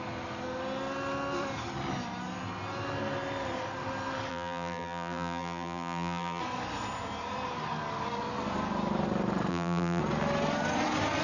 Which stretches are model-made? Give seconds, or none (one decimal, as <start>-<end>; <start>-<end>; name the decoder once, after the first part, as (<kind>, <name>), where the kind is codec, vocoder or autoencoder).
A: 4.3-6.4 (vocoder, BigVGAN v2); 9.5-10.0